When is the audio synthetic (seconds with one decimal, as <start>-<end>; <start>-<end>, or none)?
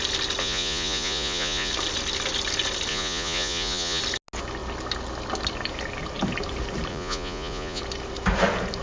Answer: 0.4-1.7; 2.9-4.0; 6.9-7.8